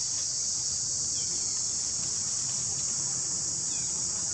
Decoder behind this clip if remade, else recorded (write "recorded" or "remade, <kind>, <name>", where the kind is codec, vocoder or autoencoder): recorded